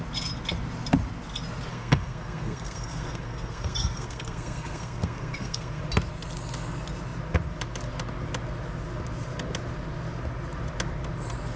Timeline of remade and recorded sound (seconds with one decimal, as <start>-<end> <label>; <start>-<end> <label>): 0.0-1.7 recorded; 1.7-5.8 remade; 5.8-11.6 recorded